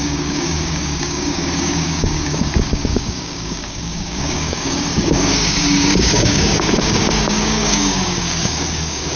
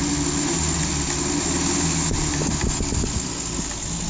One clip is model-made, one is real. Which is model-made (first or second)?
first